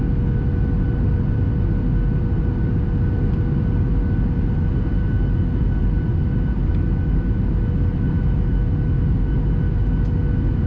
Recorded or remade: recorded